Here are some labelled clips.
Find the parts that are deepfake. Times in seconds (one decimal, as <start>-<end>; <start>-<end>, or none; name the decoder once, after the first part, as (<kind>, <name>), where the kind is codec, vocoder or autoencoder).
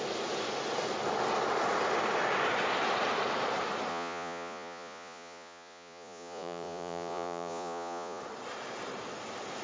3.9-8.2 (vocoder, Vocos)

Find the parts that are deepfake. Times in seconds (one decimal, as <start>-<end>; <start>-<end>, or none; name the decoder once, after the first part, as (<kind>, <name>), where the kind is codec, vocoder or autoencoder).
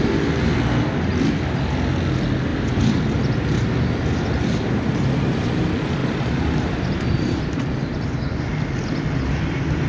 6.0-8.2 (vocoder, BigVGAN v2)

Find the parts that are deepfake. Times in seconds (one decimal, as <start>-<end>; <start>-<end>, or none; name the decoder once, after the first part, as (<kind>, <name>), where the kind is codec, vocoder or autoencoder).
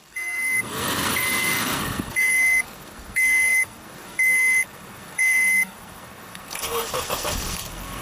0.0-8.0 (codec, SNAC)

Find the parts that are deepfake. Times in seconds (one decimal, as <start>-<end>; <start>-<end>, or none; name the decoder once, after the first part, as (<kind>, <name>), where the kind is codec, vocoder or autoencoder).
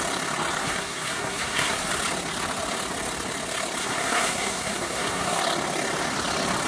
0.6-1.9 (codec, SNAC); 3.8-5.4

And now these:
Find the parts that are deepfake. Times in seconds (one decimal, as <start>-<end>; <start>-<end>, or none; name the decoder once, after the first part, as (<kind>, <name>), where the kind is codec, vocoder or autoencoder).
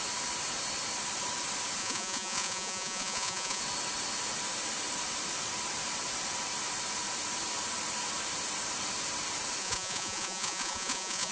1.8-3.6 (vocoder, Vocos); 9.6-11.3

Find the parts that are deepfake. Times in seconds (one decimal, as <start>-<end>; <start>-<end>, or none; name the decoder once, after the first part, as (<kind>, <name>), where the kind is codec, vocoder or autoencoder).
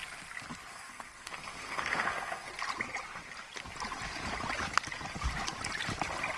0.7-2.5 (codec, SNAC)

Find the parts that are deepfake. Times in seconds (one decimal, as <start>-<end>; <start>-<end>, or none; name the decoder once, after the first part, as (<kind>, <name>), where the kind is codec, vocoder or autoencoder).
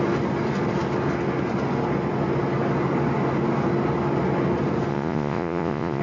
4.9-6.0 (vocoder, Vocos)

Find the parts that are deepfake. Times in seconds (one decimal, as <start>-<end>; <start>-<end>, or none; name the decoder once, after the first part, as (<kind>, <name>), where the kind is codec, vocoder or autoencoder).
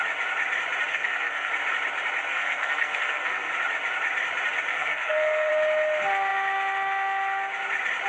0.9-1.5 (codec, SNAC); 2.3-3.5; 4.7-5.5